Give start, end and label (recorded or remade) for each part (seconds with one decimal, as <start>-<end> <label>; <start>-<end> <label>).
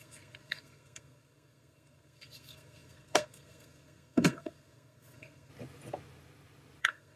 0.0-5.5 remade; 5.5-6.8 recorded; 6.8-7.2 remade